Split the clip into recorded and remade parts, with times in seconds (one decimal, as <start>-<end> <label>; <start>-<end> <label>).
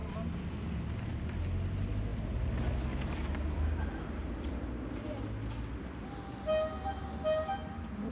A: 0.0-8.1 recorded